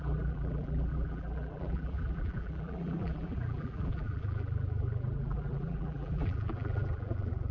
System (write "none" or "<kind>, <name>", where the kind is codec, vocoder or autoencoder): vocoder, BigVGAN v2